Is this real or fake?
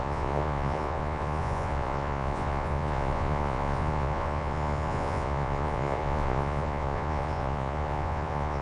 fake